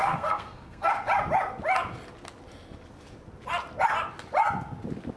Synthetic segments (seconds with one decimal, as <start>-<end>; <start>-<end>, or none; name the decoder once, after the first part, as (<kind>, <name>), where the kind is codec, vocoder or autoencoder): 0.0-0.9 (codec, SNAC)